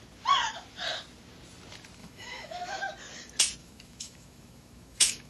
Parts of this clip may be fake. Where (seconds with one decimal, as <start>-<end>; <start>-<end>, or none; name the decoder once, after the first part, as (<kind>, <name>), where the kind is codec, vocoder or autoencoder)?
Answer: 2.0-2.8 (autoencoder, DAC-VAE); 3.6-5.3